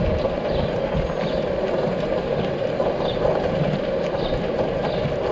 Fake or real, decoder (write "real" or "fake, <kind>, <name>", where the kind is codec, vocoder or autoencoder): real